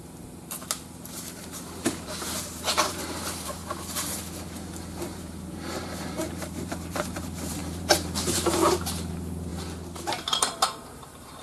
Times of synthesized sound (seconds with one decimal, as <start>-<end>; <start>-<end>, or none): 0.0-0.4; 1.0-3.6; 5.0-9.5; 10.1-11.4